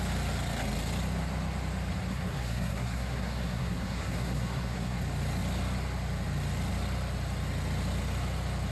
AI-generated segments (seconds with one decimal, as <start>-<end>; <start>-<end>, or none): 2.1-5.0